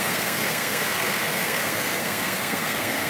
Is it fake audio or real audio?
fake